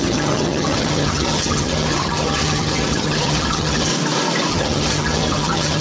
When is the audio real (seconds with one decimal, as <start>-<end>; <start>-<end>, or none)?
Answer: 3.9-4.5